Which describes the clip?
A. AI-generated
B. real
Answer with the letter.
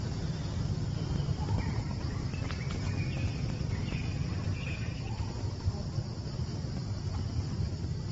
B